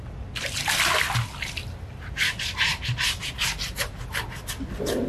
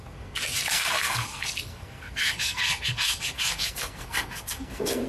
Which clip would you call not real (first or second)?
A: second